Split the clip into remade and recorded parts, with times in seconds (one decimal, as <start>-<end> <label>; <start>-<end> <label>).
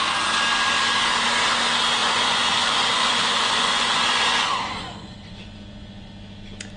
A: 0.0-2.0 recorded; 2.0-6.1 remade; 6.1-6.8 recorded